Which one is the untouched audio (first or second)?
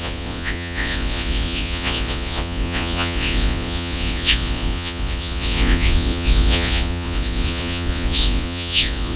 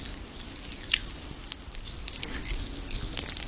second